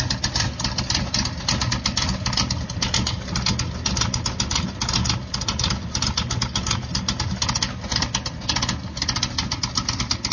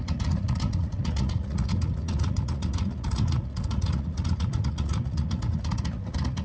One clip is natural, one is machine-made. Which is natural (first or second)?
first